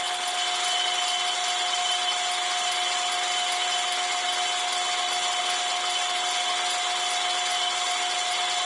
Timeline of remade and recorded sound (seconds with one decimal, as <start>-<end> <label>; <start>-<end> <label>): 0.0-8.7 recorded